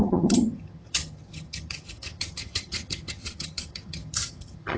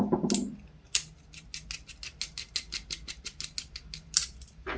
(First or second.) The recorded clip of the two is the second